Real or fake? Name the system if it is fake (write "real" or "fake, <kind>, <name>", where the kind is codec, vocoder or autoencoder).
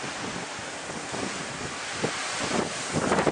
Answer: real